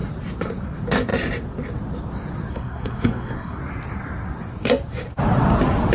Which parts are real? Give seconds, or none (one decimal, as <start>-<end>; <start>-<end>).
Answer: 0.0-2.5; 3.6-5.9